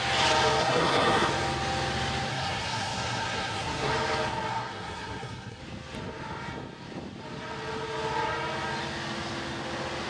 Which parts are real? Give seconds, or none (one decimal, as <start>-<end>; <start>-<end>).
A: 0.0-0.6; 1.3-2.3; 3.9-4.5; 5.6-10.1